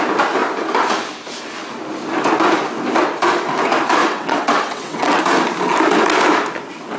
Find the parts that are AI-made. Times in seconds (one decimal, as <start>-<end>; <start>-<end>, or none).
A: 4.0-5.2